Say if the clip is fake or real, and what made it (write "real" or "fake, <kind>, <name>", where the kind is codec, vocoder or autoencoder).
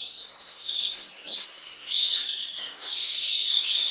fake, codec, SNAC